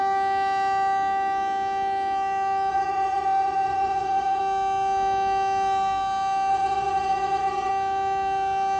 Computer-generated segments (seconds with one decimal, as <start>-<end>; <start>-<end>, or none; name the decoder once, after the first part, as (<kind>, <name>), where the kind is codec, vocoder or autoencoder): 2.7-4.4 (vocoder, Vocos); 6.5-7.7